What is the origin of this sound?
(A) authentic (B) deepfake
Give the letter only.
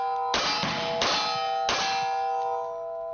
A